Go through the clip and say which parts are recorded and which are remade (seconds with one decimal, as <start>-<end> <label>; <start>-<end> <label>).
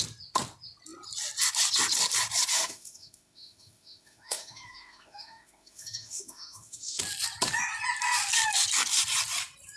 0.0-2.5 recorded; 2.5-7.0 remade; 7.0-9.8 recorded